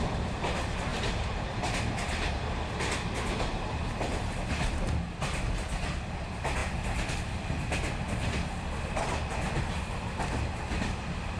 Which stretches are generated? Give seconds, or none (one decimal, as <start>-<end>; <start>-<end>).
0.9-2.3

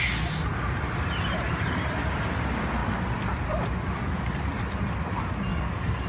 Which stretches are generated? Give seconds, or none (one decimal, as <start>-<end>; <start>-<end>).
5.5-6.1

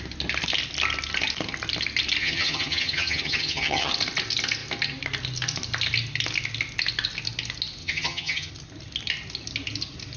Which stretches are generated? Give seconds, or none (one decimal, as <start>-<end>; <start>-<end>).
2.2-3.9; 7.8-8.5

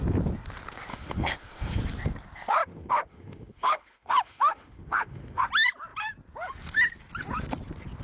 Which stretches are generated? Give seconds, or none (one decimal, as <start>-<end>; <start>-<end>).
0.9-1.8; 2.6-5.4